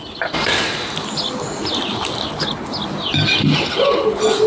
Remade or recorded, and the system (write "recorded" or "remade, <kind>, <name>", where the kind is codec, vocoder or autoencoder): recorded